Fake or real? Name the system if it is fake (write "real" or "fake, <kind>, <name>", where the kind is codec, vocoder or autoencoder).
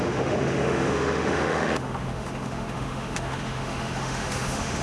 fake, autoencoder, DAC-VAE